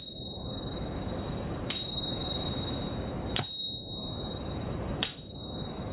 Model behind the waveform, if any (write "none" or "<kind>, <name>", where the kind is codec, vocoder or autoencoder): vocoder, BigVGAN v2